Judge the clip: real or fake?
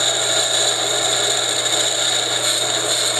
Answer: real